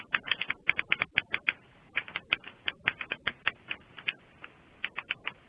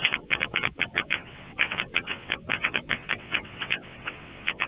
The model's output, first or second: second